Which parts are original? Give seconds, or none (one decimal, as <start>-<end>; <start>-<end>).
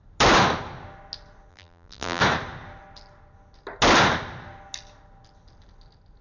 0.0-1.5; 2.2-6.2